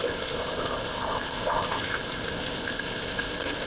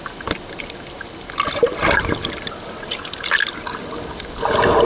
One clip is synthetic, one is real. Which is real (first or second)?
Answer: second